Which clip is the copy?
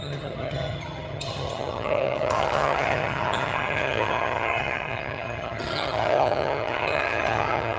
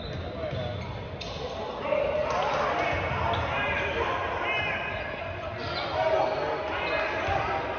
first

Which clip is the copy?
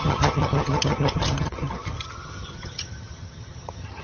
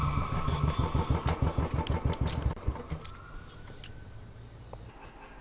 first